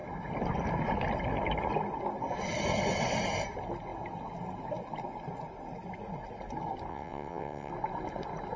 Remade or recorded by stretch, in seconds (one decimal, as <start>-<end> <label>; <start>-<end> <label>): 0.0-6.9 recorded; 6.9-7.7 remade; 7.7-8.6 recorded